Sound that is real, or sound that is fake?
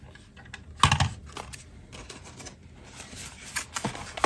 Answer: real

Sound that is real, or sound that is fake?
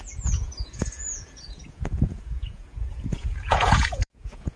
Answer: fake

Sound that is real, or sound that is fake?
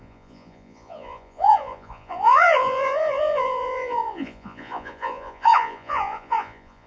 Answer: fake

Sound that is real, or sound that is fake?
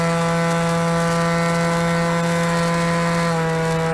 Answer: real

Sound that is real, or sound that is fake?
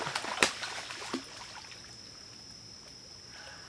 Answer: real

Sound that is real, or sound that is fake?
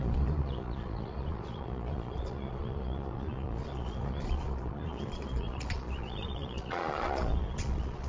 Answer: fake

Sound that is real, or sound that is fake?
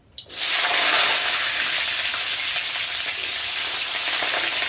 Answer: real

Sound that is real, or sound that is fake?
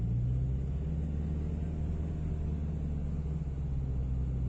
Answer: real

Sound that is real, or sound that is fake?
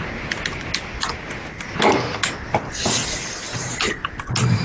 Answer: real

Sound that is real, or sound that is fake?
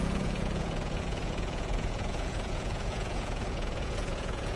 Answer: fake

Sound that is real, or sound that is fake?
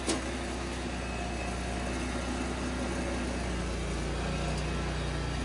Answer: real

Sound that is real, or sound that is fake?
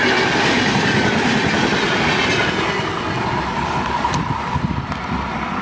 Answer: real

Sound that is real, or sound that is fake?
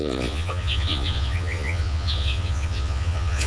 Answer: fake